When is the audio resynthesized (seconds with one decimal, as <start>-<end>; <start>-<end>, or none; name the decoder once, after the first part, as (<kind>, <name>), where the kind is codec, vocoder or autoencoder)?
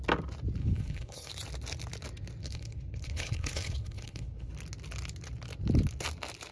0.6-1.3 (codec, HILCodec); 2.4-4.5